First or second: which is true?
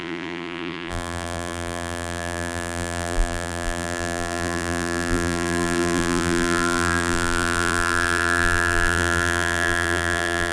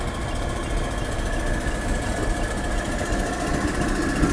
second